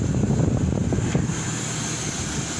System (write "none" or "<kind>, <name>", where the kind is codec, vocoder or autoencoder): none